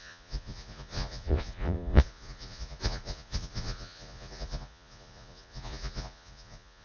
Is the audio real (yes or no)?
no